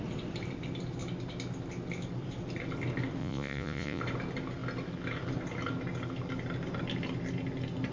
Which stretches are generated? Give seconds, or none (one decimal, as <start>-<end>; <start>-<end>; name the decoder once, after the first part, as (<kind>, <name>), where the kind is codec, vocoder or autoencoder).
3.2-4.0 (vocoder, Vocos)